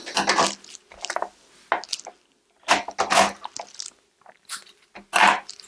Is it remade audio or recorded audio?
recorded